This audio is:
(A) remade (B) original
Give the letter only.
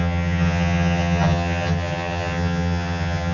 A